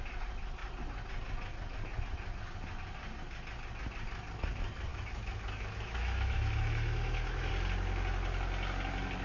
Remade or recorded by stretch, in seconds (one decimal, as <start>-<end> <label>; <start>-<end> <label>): 0.0-4.9 recorded; 4.9-7.5 remade; 7.5-9.2 recorded